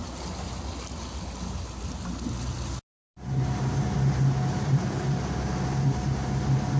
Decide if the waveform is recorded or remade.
recorded